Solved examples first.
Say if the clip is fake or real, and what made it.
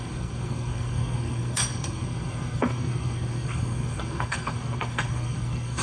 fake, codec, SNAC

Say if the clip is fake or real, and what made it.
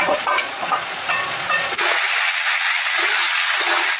fake, vocoder, Vocos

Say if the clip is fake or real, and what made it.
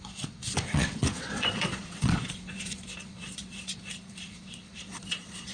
fake, vocoder, Vocos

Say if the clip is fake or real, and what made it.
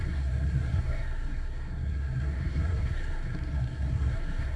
fake, codec, SNAC